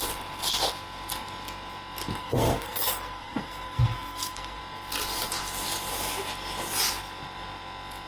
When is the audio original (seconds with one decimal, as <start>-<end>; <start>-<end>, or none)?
0.0-2.2; 4.6-8.1